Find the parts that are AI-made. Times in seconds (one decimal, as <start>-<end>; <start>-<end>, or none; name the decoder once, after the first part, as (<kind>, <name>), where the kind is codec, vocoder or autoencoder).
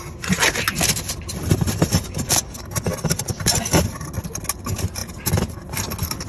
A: none